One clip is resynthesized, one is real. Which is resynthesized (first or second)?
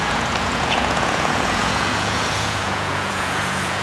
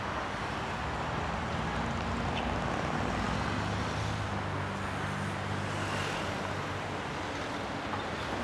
first